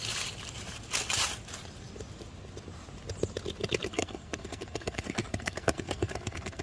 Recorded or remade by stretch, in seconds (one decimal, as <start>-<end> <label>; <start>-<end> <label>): 0.0-3.9 recorded; 3.9-6.6 remade

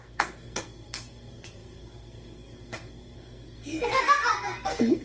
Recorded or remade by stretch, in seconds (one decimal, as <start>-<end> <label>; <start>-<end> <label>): 0.0-5.0 remade

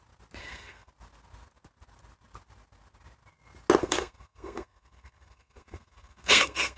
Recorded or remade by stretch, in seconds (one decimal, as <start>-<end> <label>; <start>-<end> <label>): 0.0-0.4 recorded; 0.4-0.9 remade; 0.9-3.8 recorded; 3.8-6.8 remade

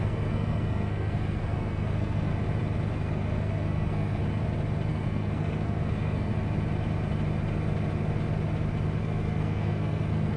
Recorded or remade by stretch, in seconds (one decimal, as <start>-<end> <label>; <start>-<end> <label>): 0.0-2.3 remade; 2.3-2.9 recorded; 2.9-4.2 remade; 4.2-4.9 recorded; 4.9-6.3 remade; 6.3-9.0 recorded; 9.0-10.4 remade